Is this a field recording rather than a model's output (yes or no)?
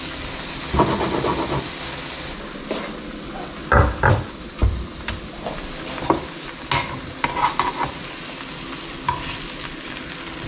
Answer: yes